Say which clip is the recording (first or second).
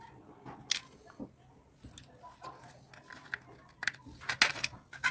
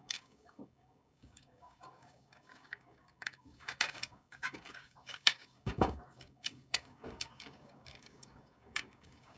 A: first